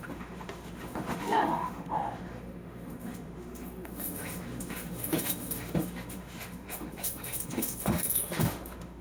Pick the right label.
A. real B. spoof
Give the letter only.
B